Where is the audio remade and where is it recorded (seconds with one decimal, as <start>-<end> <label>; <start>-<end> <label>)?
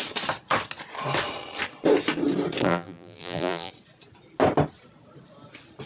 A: 0.0-2.6 recorded; 2.6-3.7 remade; 3.7-5.9 recorded